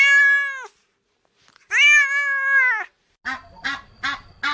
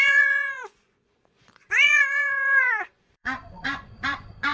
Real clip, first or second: first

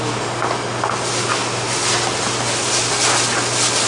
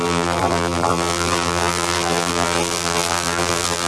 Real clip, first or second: first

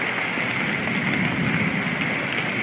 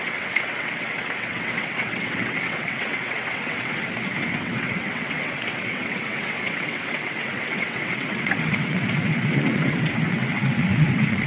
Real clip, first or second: first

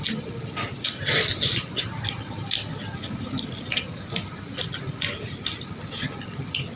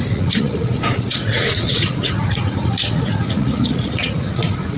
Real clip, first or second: first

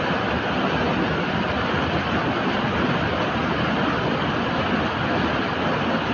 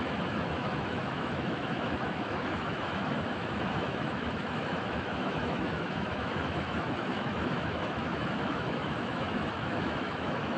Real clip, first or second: first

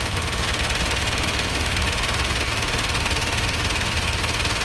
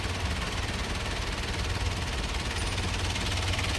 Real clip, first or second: second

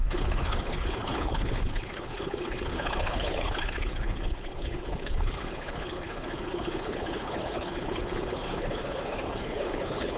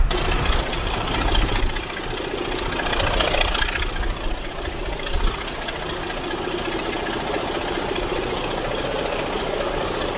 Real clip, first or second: second